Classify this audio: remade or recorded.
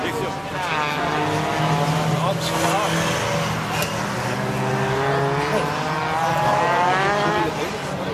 recorded